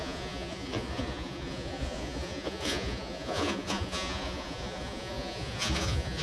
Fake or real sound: fake